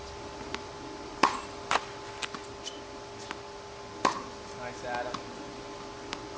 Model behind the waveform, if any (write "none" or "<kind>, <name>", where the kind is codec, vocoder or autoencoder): none